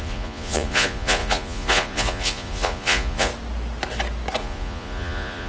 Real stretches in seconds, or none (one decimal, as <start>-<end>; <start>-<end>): 3.3-4.4